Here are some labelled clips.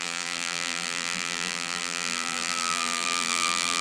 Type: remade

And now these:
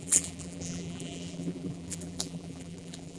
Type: remade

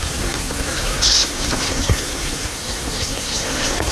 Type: remade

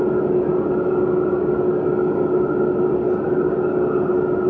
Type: recorded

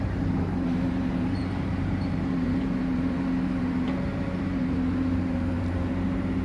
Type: remade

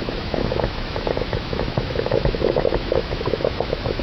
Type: remade